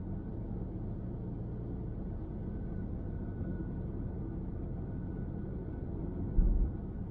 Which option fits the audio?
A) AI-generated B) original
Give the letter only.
B